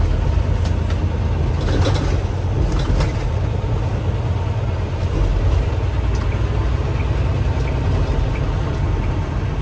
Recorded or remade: recorded